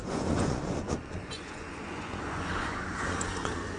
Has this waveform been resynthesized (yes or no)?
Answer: yes